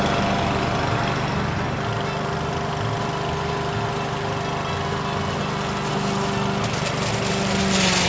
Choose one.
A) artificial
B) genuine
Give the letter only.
B